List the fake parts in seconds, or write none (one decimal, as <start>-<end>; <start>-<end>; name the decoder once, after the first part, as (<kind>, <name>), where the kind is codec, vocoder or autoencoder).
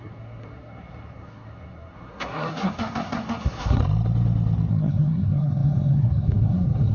0.0-3.8 (codec, SNAC); 4.7-6.9